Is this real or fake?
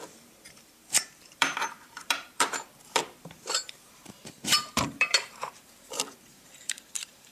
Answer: fake